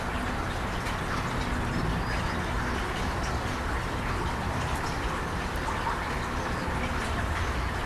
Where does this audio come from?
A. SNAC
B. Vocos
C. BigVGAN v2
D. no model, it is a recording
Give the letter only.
D